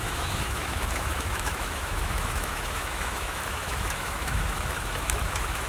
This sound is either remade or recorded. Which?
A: remade